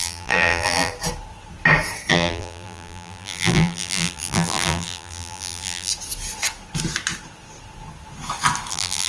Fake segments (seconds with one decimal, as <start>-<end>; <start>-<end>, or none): 0.0-0.9; 2.1-5.9; 8.7-9.1